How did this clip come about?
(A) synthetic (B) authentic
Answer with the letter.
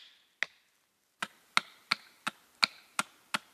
B